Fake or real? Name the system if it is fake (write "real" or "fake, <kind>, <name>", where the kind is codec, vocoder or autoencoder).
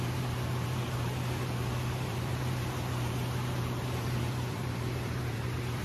fake, vocoder, BigVGAN v2